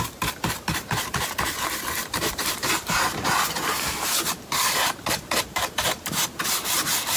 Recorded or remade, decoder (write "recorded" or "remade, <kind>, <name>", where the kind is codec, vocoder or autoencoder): remade, vocoder, BigVGAN v2